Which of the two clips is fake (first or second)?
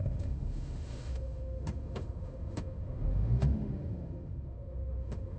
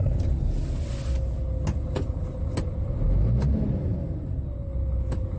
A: first